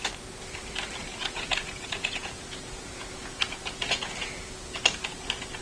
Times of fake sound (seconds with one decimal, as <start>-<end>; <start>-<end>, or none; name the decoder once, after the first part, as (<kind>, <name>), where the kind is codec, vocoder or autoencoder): 1.1-4.5 (vocoder, Vocos)

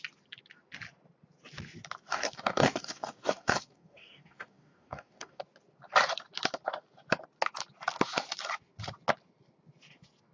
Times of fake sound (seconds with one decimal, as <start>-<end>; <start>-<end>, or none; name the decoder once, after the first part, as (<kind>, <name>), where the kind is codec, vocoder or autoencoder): 2.1-5.4 (codec, DAC)